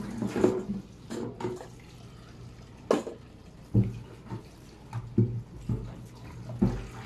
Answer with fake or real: real